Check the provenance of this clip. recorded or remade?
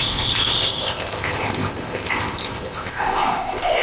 remade